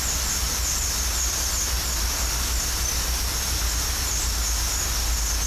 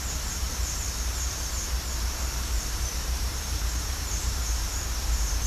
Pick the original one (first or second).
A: first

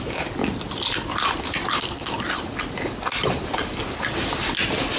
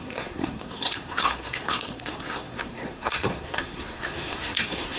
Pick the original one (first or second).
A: first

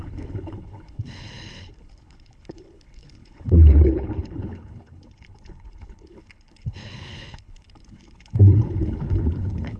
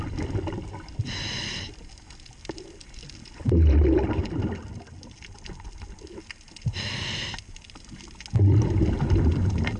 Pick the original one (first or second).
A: second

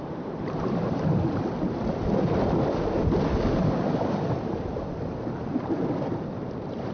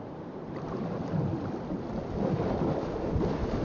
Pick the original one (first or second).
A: second